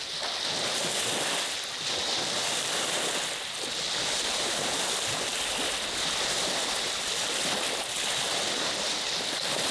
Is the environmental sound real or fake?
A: real